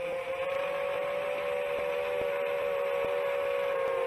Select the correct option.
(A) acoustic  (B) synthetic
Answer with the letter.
A